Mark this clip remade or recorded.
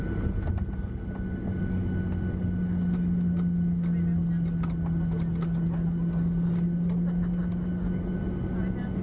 recorded